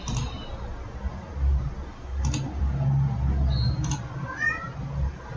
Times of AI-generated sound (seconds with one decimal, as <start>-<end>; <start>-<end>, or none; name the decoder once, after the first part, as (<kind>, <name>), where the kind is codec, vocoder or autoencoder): none